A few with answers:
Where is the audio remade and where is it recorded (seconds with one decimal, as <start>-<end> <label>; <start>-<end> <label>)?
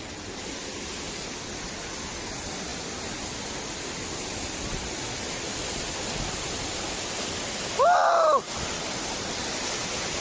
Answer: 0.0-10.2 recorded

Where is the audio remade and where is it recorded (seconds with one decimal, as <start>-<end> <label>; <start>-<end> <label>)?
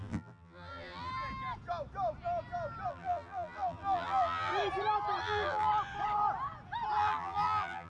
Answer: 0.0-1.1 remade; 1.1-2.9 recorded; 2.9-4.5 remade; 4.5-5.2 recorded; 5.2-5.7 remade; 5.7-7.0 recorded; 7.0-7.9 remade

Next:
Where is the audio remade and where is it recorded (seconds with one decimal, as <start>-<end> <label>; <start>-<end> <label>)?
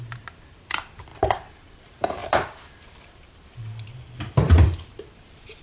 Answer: 0.0-3.9 remade; 3.9-4.6 recorded; 4.6-5.6 remade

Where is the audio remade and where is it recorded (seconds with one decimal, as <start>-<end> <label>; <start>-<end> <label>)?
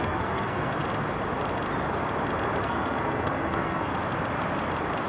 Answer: 0.0-0.8 remade; 0.8-2.6 recorded; 2.6-3.9 remade; 3.9-5.1 recorded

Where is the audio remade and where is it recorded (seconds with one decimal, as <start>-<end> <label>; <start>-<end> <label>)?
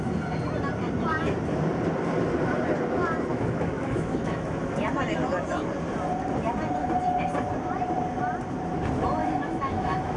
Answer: 0.0-3.3 recorded; 3.3-4.6 remade; 4.6-9.2 recorded; 9.2-10.2 remade